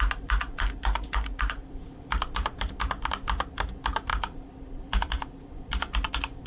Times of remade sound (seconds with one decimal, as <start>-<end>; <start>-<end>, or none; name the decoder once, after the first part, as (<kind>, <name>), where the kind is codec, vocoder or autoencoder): 0.4-1.7 (vocoder, BigVGAN v2); 4.1-6.1